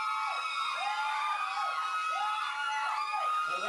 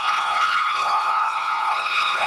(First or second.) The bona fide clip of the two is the first